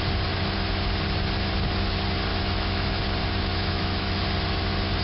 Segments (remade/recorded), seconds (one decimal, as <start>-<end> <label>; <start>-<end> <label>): 0.0-2.3 recorded; 2.3-3.0 remade; 3.0-3.5 recorded; 3.5-4.2 remade; 4.2-5.0 recorded